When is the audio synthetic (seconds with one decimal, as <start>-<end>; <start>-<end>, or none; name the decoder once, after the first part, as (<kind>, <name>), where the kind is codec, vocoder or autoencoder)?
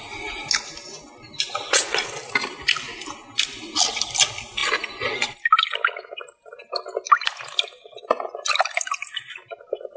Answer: none